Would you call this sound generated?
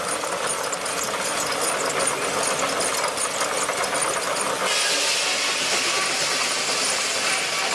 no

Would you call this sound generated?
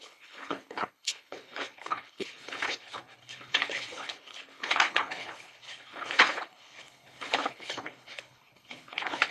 yes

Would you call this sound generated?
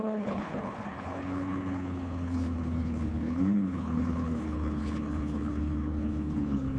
yes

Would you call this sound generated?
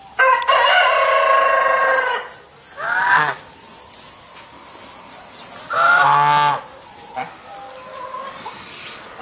no